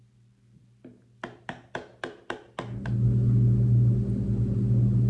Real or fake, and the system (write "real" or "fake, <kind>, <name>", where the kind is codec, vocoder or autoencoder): real